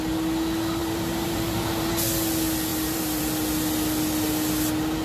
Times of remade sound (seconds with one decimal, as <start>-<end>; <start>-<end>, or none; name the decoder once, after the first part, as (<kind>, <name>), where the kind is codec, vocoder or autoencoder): 0.8-1.9 (vocoder, BigVGAN v2); 2.7-3.2